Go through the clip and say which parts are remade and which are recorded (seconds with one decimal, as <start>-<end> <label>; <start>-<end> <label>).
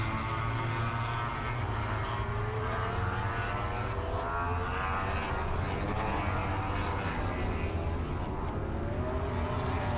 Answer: 0.0-10.0 recorded